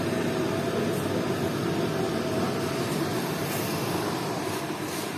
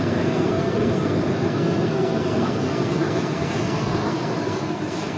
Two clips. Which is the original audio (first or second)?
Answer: first